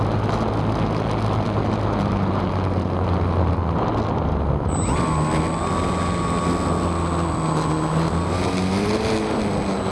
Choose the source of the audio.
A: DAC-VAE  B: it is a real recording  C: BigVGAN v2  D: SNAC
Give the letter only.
B